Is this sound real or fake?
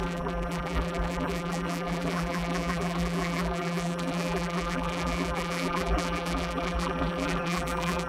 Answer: fake